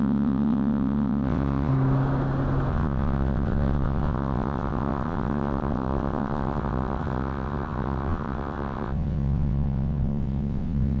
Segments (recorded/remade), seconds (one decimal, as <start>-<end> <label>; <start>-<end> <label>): 0.0-1.7 remade; 1.7-2.7 recorded; 2.7-11.0 remade